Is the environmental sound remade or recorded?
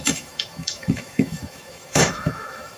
remade